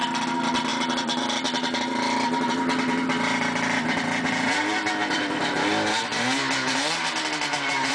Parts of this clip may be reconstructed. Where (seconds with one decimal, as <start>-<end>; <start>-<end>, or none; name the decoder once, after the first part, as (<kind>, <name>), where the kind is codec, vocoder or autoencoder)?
0.7-5.4 (vocoder, BigVGAN v2)